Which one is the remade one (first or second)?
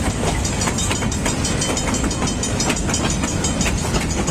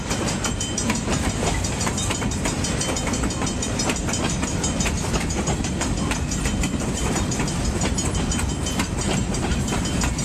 second